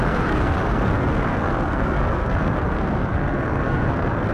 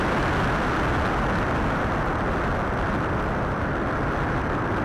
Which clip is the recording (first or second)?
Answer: second